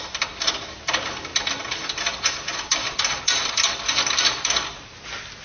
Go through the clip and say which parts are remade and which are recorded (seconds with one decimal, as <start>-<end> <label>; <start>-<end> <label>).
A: 0.0-5.4 recorded